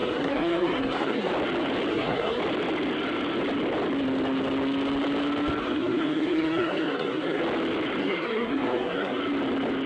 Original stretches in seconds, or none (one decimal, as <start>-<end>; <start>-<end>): 1.3-1.9; 2.4-5.6; 7.4-8.0; 9.2-9.9